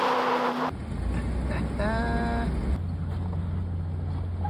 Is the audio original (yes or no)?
yes